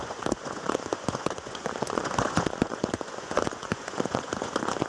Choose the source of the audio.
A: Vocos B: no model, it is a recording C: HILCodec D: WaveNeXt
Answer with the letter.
A